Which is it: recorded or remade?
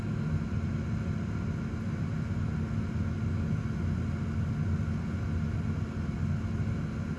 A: recorded